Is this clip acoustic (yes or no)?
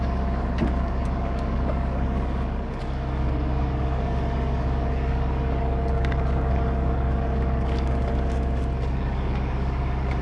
no